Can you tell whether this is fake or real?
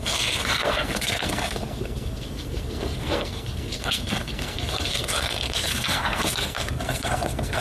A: fake